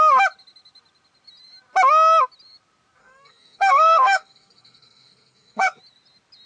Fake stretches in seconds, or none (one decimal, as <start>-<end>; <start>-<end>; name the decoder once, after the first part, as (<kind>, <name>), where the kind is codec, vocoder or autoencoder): 3.0-5.8 (codec, SNAC)

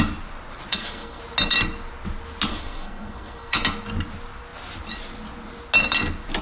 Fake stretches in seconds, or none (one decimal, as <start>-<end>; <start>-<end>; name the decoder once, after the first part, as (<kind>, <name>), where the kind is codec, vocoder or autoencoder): 0.7-1.2 (codec, SNAC); 2.5-3.6

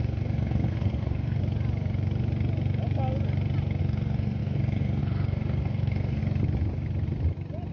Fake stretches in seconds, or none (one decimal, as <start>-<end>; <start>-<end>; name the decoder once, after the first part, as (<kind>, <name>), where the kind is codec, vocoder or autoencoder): 0.0-1.4 (codec, SNAC); 3.8-6.2

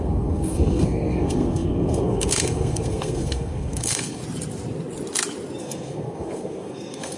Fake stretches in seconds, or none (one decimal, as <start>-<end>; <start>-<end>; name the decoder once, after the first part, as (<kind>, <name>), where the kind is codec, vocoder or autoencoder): 0.0-4.2 (codec, SNAC); 5.6-7.2

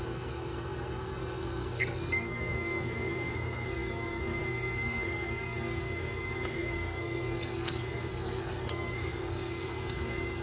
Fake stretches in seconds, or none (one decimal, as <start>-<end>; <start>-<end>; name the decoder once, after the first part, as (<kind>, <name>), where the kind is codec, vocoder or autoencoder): 0.0-10.4 (codec, SNAC)